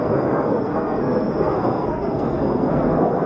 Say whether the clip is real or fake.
fake